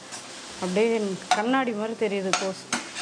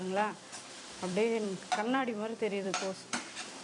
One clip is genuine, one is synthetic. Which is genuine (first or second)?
first